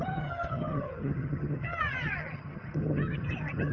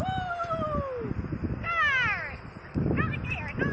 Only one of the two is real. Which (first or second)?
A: second